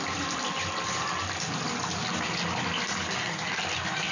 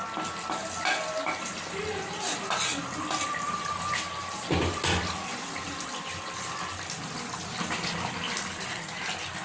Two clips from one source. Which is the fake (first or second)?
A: first